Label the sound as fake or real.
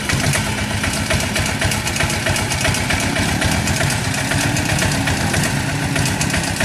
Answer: real